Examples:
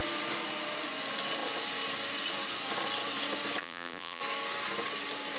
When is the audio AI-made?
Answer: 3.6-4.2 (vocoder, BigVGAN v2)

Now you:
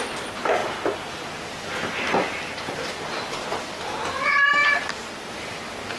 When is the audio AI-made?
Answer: 0.6-1.2 (vocoder, BigVGAN v2)

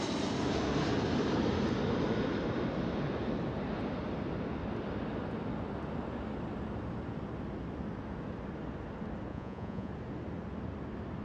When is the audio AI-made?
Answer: 9.3-9.9 (vocoder, Vocos)

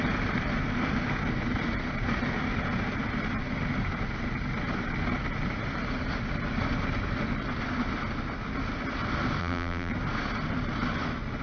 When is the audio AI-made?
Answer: 9.4-9.9 (vocoder, BigVGAN v2)

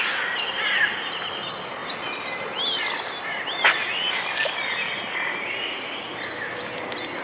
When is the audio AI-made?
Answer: none

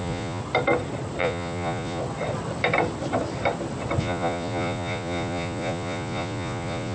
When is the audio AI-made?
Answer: 0.0-0.4 (vocoder, Vocos); 1.2-2.0; 4.0-6.9

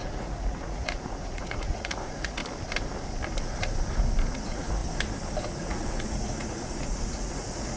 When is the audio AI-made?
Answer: 0.0-2.4 (vocoder, Vocos); 4.3-4.8; 5.5-7.8

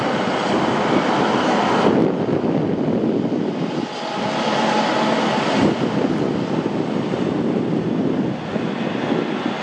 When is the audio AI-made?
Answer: none